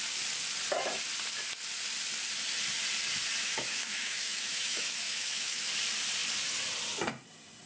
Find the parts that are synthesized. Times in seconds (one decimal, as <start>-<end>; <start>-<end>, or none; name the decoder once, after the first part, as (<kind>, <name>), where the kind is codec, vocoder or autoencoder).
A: 3.4-5.7 (autoencoder, DAC-VAE)